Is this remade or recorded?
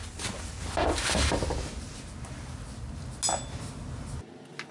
recorded